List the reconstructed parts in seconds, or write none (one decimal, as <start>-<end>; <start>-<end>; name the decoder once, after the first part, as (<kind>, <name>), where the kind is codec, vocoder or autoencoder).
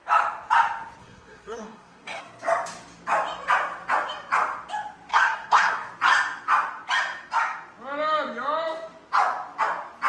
1.0-2.2 (codec, SNAC); 5.1-5.9